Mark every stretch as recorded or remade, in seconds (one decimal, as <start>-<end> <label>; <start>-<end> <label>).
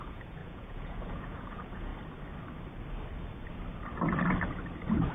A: 0.0-1.9 remade; 1.9-5.1 recorded